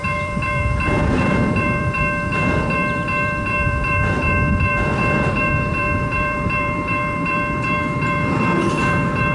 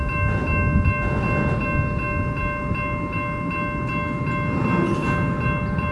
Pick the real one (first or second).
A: second